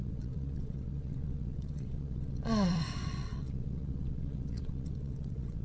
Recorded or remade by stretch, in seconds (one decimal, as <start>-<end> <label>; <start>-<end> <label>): 0.0-5.6 remade